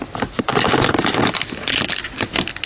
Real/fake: real